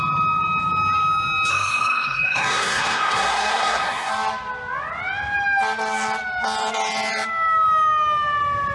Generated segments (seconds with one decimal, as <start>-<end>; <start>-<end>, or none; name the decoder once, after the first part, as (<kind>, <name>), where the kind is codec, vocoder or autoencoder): 1.5-4.1 (codec, SNAC)